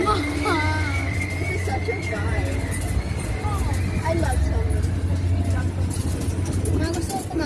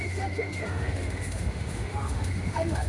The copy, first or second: second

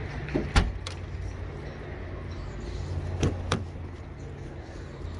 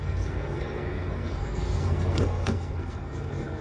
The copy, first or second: second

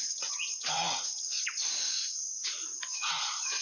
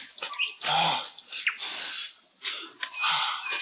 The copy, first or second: first